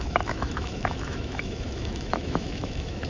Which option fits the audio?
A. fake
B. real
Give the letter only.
A